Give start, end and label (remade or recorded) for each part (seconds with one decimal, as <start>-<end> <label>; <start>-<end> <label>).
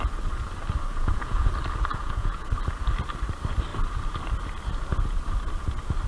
0.0-0.9 recorded; 0.9-1.5 remade; 1.5-1.9 recorded; 1.9-2.5 remade; 2.5-6.1 recorded